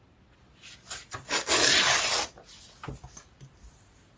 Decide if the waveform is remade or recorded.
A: recorded